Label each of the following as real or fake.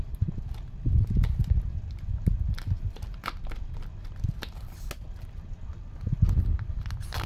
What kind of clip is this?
real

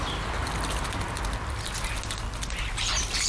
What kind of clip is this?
real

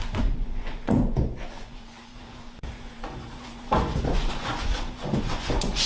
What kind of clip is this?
fake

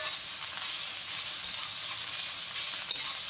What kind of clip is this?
real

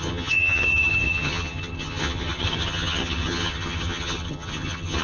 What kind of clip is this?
fake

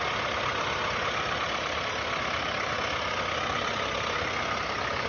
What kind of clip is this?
real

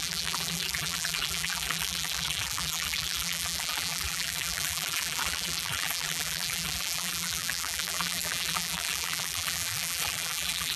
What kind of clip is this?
fake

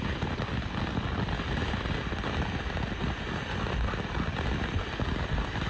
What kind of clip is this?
real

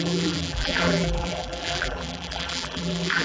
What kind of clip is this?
fake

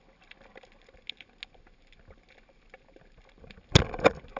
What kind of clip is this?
real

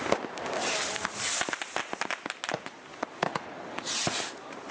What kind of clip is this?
real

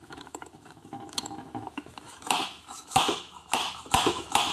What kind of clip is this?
fake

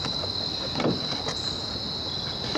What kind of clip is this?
real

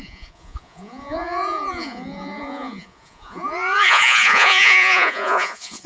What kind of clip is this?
fake